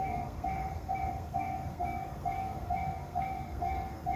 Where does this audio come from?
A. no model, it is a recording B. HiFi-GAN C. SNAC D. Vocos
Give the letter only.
C